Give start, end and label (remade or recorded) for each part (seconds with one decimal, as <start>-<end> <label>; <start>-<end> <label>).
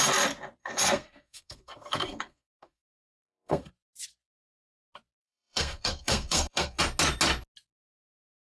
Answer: 0.0-0.6 recorded; 0.6-3.7 remade; 3.7-5.2 recorded; 5.2-6.8 remade; 6.8-8.4 recorded